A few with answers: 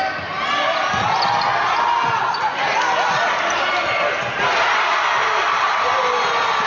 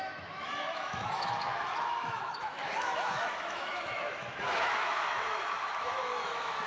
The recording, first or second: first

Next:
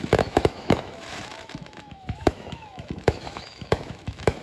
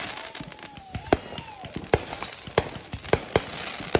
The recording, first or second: second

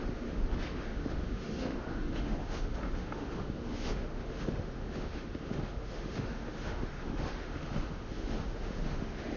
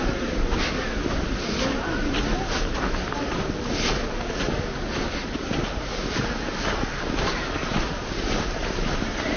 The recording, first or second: second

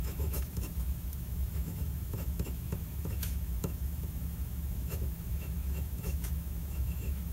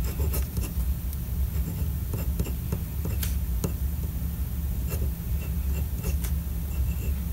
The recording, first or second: second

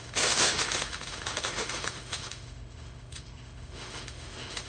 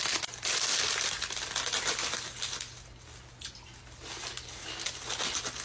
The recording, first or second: second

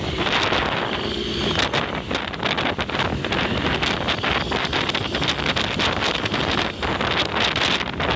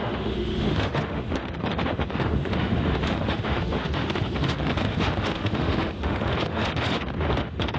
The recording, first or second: first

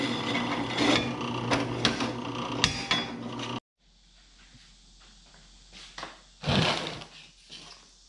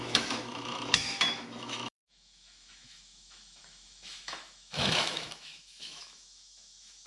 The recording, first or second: first